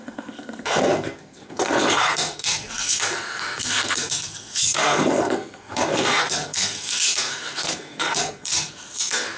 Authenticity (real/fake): fake